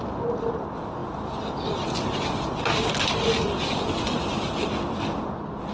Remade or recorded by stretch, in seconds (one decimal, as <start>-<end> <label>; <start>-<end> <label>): 0.0-5.7 recorded

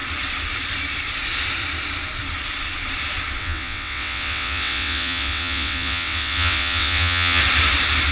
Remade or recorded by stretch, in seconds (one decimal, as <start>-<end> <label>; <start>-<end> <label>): 0.0-3.4 recorded; 3.4-7.4 remade; 7.4-8.1 recorded

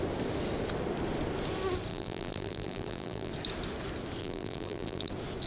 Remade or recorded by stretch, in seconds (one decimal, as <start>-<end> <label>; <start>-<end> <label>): 0.0-1.9 recorded; 1.9-3.3 remade; 3.3-4.2 recorded; 4.2-5.1 remade; 5.1-5.5 recorded

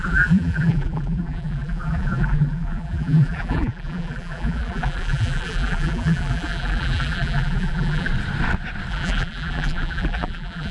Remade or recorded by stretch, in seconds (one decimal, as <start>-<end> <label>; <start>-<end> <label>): 0.0-8.1 remade; 8.1-8.9 recorded; 8.9-10.7 remade

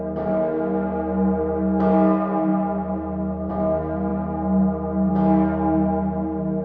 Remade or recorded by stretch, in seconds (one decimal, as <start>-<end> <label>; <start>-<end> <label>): 0.0-6.6 recorded

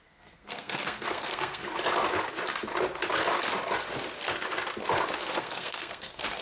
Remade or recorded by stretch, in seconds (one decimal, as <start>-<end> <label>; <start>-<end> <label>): 0.0-1.6 remade; 1.6-5.4 recorded; 5.4-6.4 remade

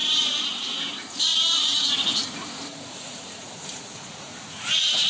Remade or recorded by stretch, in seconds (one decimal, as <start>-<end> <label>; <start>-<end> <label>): 0.0-5.1 remade

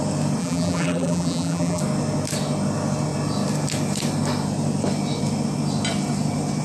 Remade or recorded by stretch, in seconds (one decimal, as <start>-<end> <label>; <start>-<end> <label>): 0.0-0.4 recorded; 0.4-1.8 remade; 1.8-6.6 recorded